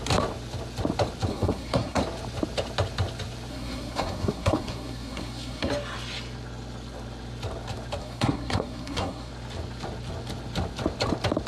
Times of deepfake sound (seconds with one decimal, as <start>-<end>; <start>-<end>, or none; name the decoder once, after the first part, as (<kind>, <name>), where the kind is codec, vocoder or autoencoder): 1.3-2.0 (codec, SNAC); 3.5-5.7; 8.0-9.3